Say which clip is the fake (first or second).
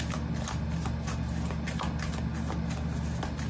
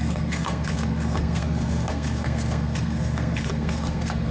second